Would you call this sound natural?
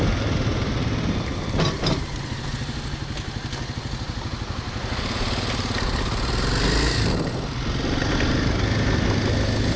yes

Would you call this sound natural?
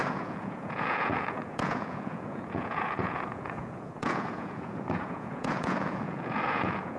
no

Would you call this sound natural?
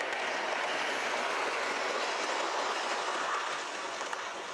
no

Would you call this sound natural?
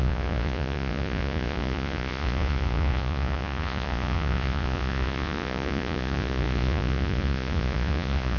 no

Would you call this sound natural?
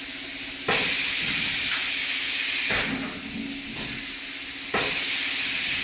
yes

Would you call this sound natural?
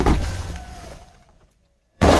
no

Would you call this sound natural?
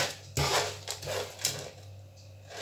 yes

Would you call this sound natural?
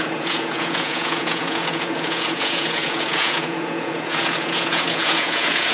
no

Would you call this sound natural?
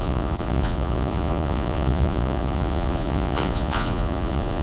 no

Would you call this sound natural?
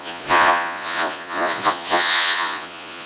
no